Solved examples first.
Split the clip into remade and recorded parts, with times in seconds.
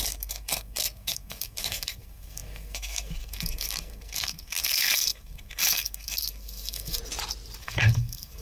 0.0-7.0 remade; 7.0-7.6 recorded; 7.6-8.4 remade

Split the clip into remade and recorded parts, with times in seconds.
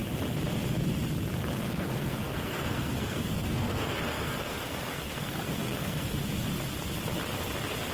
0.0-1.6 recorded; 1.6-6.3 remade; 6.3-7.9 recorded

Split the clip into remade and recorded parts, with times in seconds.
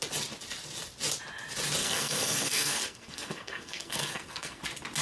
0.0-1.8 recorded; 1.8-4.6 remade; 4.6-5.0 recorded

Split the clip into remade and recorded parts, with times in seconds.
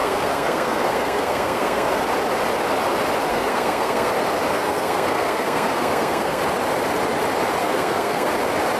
0.0-2.0 remade; 2.0-3.3 recorded; 3.3-4.1 remade; 4.1-4.5 recorded; 4.5-6.4 remade; 6.4-7.6 recorded; 7.6-8.3 remade; 8.3-8.8 recorded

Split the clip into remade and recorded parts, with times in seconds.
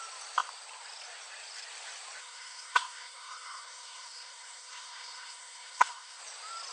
0.0-2.2 recorded; 2.2-6.2 remade; 6.2-6.7 recorded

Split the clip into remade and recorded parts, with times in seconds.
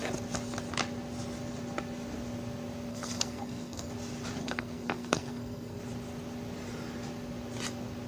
0.0-2.9 recorded; 2.9-3.9 remade; 3.9-4.4 recorded; 4.4-5.8 remade; 5.8-8.1 recorded